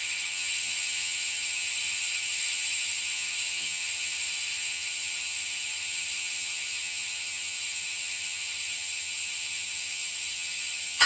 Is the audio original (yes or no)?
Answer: no